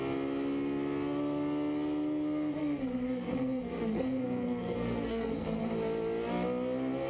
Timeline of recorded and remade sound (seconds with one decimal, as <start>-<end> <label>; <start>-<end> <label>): 0.0-2.6 recorded; 2.6-5.6 remade; 5.6-7.1 recorded